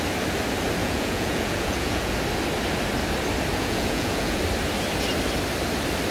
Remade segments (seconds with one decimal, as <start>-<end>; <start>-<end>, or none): 0.8-2.1; 3.5-4.4